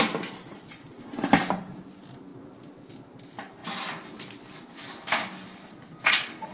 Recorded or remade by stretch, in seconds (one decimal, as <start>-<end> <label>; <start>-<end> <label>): 0.0-6.5 recorded

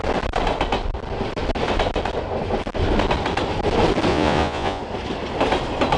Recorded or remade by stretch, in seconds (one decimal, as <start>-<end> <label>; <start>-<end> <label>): 0.0-4.1 recorded; 4.1-4.8 remade; 4.8-6.0 recorded

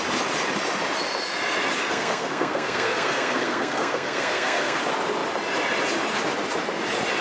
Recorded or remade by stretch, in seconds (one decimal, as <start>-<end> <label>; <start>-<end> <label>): 0.0-1.8 recorded; 1.8-4.8 remade; 4.8-7.2 recorded

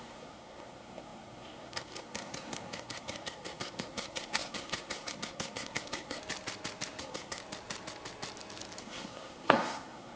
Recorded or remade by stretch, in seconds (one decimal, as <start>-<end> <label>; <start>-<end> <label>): 0.0-6.2 remade; 6.2-7.0 recorded; 7.0-7.4 remade; 7.4-8.8 recorded; 8.8-10.2 remade

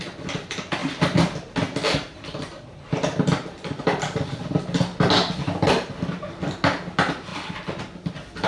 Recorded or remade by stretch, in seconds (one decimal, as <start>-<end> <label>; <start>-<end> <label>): 0.0-8.5 recorded

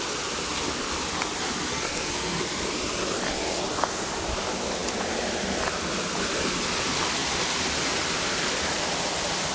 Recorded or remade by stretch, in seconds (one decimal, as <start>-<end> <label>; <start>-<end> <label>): 0.0-1.7 recorded; 1.7-2.4 remade; 2.4-9.5 recorded

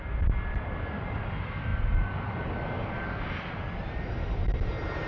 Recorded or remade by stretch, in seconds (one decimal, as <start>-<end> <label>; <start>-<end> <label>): 0.0-5.1 recorded

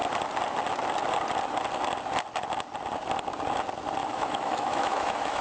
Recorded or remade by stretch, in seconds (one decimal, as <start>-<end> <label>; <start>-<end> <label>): 0.0-4.0 recorded; 4.0-5.4 remade